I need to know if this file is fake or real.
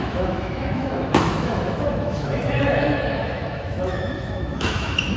fake